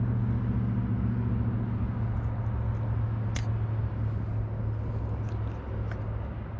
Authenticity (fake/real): real